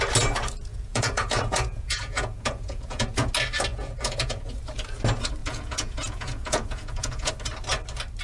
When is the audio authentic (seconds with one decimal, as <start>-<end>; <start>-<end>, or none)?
0.0-0.7; 3.3-3.7; 4.5-5.4; 7.3-8.2